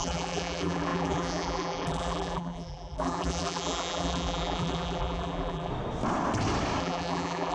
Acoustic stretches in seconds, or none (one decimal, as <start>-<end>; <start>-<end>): 5.7-6.8